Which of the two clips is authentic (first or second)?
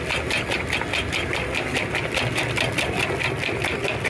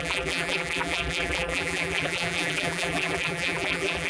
first